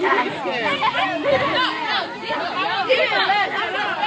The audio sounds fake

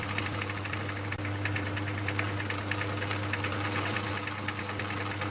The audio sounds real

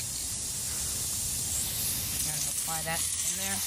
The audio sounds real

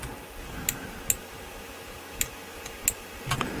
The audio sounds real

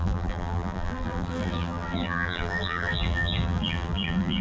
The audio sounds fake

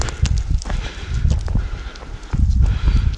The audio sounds real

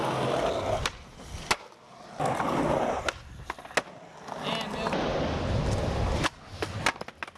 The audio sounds real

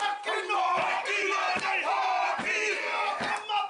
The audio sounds fake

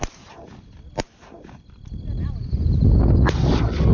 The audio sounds real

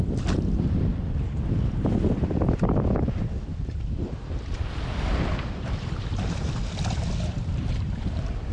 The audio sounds fake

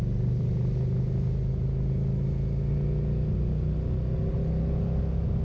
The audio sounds real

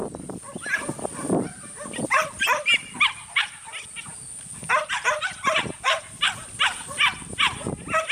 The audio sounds real